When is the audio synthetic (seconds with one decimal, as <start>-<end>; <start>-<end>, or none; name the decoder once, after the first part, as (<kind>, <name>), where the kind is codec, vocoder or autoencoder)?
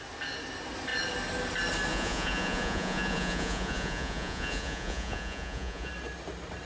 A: 1.9-5.9 (vocoder, Vocos)